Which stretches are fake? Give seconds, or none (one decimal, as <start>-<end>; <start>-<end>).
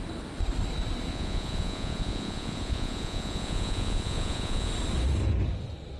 1.1-4.7